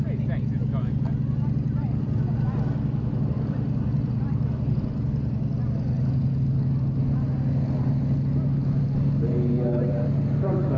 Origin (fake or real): real